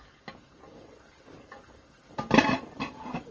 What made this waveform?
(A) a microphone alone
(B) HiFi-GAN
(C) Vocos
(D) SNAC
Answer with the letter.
A